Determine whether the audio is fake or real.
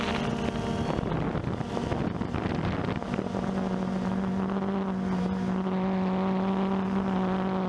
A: real